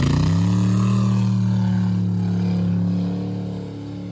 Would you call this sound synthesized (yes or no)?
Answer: no